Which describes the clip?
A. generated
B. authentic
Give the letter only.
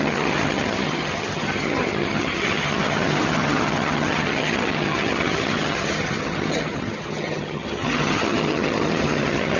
A